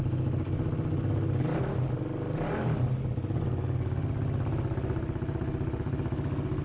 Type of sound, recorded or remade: recorded